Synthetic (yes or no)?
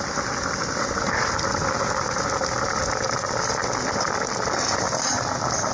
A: no